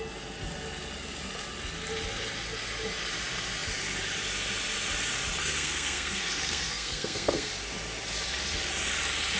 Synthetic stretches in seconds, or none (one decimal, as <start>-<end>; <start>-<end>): 5.4-7.5